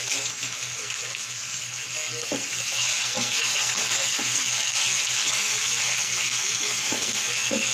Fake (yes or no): yes